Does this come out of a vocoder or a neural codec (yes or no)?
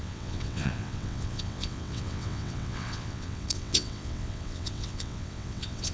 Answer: yes